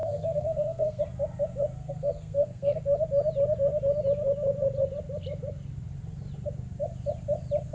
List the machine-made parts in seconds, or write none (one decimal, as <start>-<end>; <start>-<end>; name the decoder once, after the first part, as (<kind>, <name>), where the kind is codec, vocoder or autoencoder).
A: 0.0-1.0 (codec, SNAC); 1.8-2.8